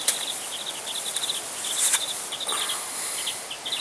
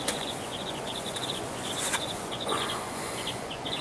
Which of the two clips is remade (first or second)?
second